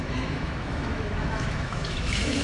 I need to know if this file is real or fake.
fake